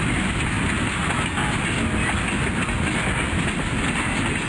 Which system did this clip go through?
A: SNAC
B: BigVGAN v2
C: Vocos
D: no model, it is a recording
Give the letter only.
D